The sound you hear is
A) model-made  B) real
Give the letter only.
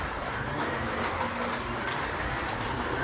B